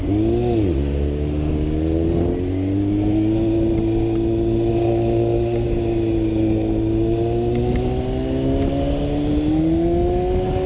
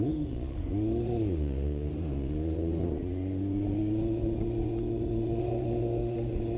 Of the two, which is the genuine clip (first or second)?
first